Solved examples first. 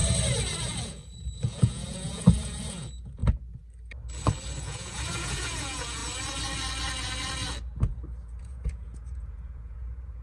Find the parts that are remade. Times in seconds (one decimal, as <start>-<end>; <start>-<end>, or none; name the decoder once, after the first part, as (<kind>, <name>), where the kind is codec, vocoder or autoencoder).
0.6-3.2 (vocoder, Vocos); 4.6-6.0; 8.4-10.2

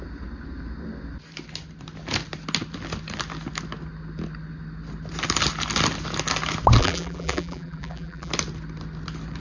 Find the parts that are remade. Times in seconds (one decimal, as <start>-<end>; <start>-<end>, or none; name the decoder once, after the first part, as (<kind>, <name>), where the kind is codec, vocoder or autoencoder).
6.8-8.3 (vocoder, BigVGAN v2)

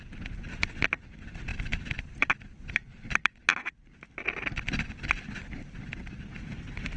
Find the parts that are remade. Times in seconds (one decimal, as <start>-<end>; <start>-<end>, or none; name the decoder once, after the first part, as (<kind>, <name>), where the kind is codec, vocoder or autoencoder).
none

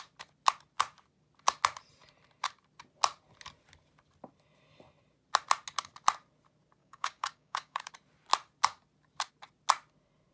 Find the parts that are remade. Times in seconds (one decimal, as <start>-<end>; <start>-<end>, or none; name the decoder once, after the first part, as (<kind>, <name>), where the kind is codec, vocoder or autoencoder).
6.8-7.9 (codec, DAC)

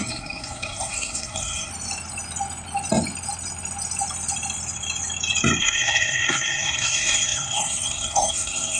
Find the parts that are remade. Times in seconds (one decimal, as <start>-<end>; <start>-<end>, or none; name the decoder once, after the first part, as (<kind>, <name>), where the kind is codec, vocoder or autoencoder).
0.0-1.7 (codec, SNAC); 5.6-8.8

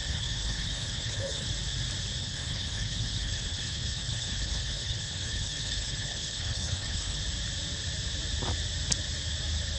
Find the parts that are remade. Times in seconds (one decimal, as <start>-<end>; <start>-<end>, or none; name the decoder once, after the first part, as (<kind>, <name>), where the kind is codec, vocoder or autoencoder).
0.0-1.5 (codec, HILCodec); 2.2-7.2

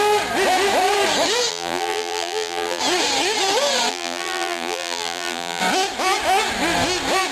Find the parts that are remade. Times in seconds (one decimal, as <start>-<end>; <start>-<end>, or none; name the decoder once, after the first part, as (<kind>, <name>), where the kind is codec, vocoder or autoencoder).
1.5-2.8 (vocoder, BigVGAN v2); 3.9-5.6

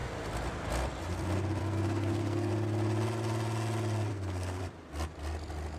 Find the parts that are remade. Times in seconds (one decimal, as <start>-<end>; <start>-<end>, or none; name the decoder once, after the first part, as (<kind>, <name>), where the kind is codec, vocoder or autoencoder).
1.6-2.5 (codec, SNAC); 4.1-4.6